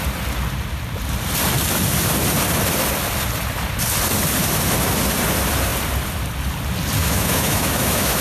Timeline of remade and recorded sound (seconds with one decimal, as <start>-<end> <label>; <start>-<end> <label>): 0.0-7.0 recorded; 7.0-8.2 remade